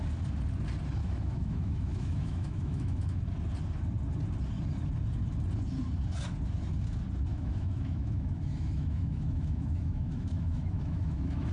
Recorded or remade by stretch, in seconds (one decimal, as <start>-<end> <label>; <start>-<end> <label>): 0.0-1.0 recorded; 1.0-3.2 remade; 3.2-7.3 recorded; 7.3-11.5 remade